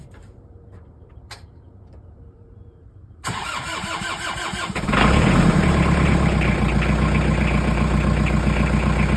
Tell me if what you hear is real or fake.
fake